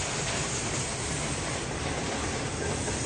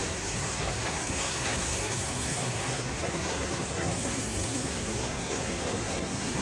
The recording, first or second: first